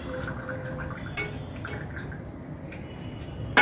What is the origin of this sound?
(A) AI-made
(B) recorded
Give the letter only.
B